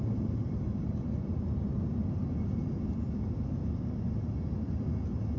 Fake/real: real